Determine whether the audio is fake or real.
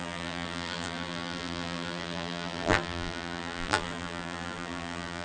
fake